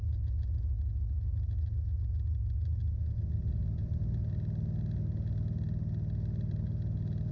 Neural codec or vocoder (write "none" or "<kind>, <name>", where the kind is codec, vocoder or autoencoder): none